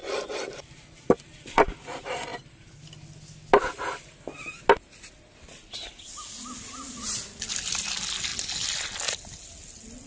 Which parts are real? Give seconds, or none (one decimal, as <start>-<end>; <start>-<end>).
1.7-10.1

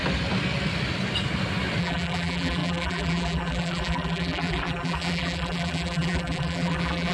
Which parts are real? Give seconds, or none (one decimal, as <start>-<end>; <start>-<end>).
0.0-1.8

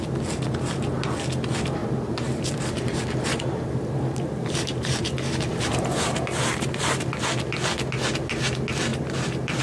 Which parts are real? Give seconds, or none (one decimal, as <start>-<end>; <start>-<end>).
0.0-1.8; 7.0-8.9

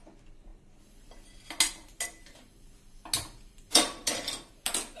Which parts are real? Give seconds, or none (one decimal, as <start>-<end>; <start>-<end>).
0.0-3.7; 4.5-5.0

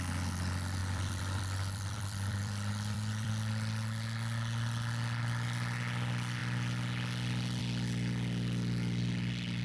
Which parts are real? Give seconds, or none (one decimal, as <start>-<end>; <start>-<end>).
0.0-0.8; 3.3-9.6

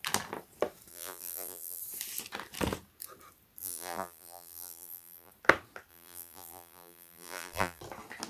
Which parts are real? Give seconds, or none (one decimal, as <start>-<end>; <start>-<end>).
0.0-0.9; 1.8-3.6; 5.3-5.9; 7.8-8.3

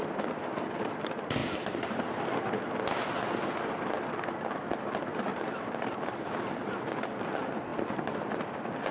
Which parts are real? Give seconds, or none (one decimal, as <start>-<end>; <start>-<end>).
0.0-1.4; 2.2-5.3; 6.8-8.9

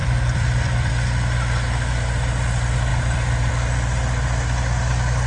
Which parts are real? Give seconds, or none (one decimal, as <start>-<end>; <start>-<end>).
0.9-2.9; 3.5-5.3